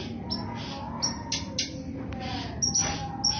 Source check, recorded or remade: recorded